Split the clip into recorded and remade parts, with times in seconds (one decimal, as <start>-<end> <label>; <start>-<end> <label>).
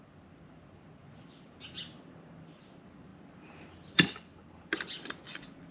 0.0-5.7 recorded